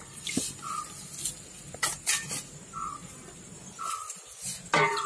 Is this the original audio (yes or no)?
yes